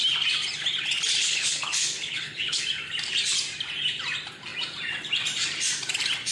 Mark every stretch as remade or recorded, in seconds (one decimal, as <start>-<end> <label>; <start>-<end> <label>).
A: 0.0-1.2 recorded; 1.2-2.6 remade; 2.6-6.3 recorded